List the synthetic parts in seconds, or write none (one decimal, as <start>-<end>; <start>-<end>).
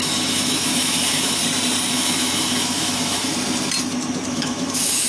0.0-1.4; 1.9-3.3; 4.3-5.1